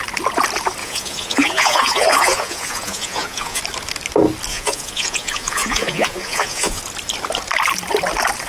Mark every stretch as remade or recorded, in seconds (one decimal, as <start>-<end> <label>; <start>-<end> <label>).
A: 0.0-0.8 recorded; 0.8-3.6 remade; 3.6-4.5 recorded; 4.5-6.8 remade; 6.8-8.5 recorded